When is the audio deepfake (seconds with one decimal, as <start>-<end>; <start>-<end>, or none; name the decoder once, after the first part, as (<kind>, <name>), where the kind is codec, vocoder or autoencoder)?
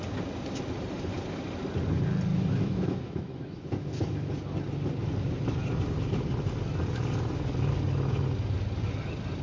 2.3-4.3 (autoencoder, DAC-VAE)